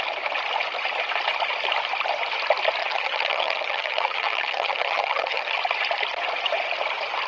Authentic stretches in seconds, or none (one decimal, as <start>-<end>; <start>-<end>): 0.0-2.8; 5.6-7.3